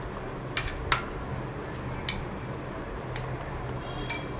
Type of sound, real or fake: real